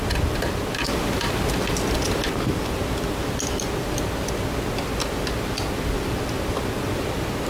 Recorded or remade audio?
recorded